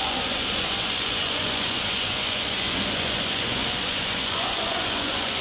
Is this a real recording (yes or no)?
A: no